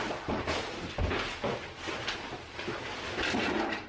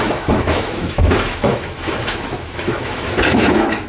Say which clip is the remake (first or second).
second